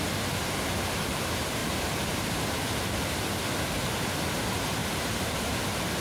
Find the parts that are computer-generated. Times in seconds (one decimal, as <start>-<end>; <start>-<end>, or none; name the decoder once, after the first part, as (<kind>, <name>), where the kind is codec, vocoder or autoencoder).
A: 1.6-4.2 (vocoder, BigVGAN v2); 4.8-5.6